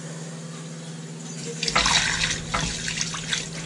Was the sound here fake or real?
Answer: real